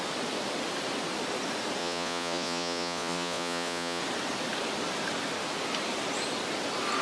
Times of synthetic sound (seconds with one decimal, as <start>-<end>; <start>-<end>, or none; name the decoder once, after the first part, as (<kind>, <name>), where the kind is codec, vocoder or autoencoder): 1.8-4.0 (vocoder, Vocos)

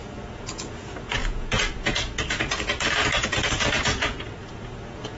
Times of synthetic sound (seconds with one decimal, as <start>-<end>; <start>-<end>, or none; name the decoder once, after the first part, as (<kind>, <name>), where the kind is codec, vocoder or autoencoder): 0.0-5.2 (vocoder, Vocos)

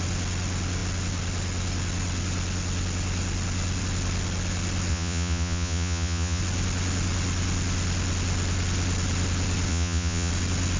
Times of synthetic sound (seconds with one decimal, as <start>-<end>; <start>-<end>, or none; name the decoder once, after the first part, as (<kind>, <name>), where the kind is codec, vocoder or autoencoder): 4.9-6.4 (vocoder, Vocos); 9.7-10.3